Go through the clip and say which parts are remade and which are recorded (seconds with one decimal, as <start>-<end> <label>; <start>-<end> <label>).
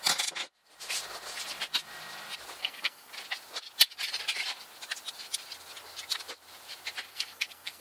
0.0-2.6 recorded; 2.6-3.1 remade; 3.1-7.1 recorded; 7.1-7.8 remade